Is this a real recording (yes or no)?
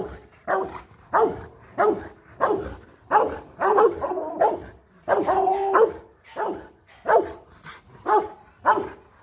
yes